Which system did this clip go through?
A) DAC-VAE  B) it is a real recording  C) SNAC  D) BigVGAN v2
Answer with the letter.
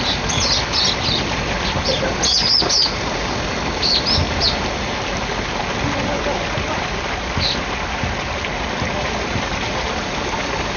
B